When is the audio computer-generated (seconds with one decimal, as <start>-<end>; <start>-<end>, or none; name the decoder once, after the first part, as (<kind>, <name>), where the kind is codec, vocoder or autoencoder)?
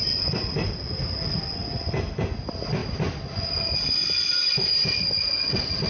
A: none